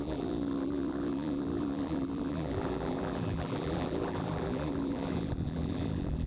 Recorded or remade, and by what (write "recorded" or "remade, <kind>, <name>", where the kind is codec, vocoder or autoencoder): remade, vocoder, BigVGAN v2